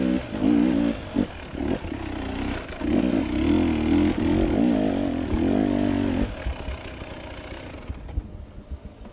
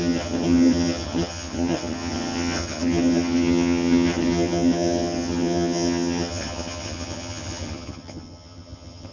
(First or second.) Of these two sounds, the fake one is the second